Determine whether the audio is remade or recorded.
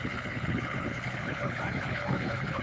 remade